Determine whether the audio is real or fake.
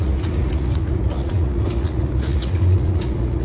fake